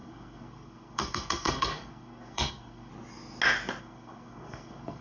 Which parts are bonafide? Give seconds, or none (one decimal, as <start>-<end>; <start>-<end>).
2.9-3.8